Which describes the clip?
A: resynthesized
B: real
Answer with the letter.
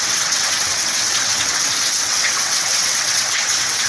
A